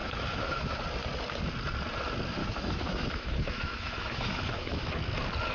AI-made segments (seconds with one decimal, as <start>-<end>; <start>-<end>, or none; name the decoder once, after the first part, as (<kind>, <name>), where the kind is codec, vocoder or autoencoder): 0.0-0.8 (autoencoder, DAC-VAE); 2.4-4.9